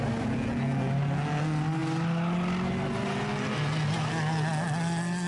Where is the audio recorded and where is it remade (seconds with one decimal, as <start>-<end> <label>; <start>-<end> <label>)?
0.0-5.3 recorded